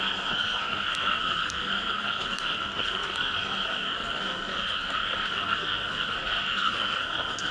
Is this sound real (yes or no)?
no